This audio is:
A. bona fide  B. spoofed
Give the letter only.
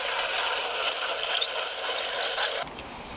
A